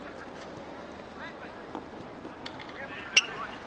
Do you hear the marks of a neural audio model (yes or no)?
no